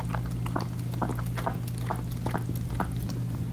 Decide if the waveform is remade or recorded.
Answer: recorded